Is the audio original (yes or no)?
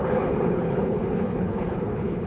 no